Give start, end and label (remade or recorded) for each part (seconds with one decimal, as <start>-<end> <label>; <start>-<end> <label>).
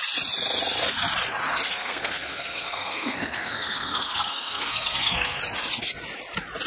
0.0-1.8 recorded; 1.8-5.4 remade; 5.4-6.7 recorded